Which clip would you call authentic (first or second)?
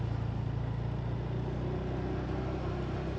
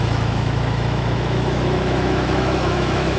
first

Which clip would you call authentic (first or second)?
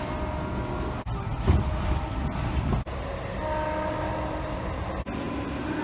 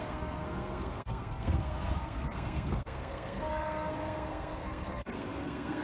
first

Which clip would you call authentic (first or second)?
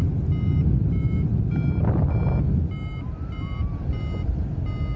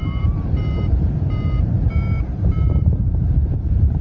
first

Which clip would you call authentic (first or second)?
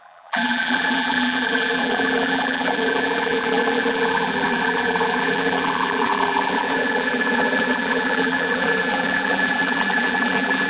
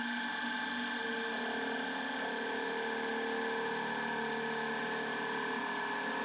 second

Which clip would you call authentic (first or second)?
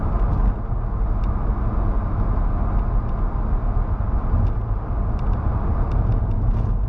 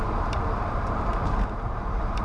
first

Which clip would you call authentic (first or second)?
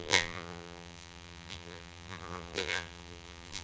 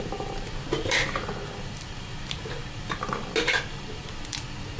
second